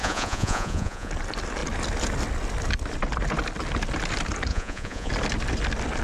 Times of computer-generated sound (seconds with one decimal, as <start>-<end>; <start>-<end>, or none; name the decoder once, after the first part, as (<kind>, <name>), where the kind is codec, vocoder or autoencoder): 0.0-1.1 (vocoder, Vocos); 4.5-5.1